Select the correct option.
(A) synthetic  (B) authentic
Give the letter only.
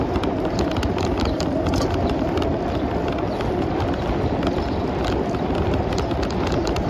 B